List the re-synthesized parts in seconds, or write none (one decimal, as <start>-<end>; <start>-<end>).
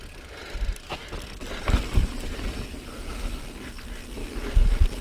2.0-3.1